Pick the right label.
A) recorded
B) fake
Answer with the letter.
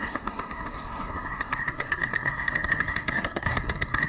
B